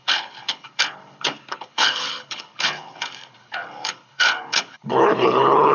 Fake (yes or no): yes